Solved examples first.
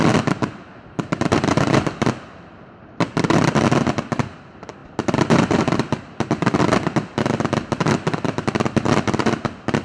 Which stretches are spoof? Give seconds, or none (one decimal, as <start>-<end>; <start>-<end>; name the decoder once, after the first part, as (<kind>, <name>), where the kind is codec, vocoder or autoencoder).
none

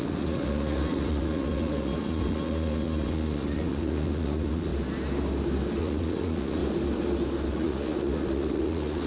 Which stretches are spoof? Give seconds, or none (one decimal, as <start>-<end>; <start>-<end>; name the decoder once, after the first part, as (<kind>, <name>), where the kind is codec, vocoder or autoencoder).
0.0-4.7 (vocoder, Vocos); 5.8-6.6; 7.5-9.1

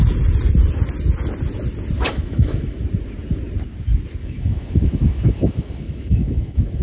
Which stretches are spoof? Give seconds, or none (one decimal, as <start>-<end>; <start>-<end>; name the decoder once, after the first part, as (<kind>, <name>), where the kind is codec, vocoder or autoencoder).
2.1-2.8 (autoencoder, DAC-VAE); 4.2-6.8